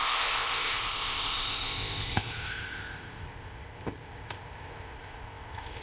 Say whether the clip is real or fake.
fake